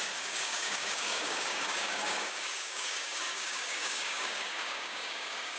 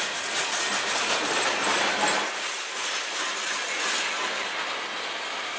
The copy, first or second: first